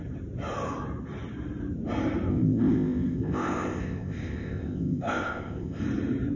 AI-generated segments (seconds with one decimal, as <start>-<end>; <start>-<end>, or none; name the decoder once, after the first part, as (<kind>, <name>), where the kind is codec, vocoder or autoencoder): 2.3-5.8 (codec, ZipCodec)